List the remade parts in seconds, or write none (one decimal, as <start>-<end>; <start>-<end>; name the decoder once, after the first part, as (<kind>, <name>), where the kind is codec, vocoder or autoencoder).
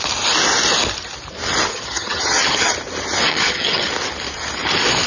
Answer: 1.7-2.7 (vocoder, HiFi-GAN); 3.3-3.9